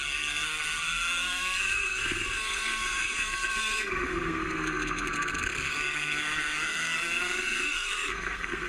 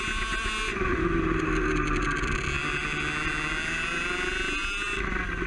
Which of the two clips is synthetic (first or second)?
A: first